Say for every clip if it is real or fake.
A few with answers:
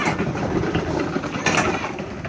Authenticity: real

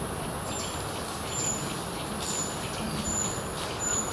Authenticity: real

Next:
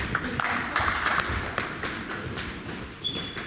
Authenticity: real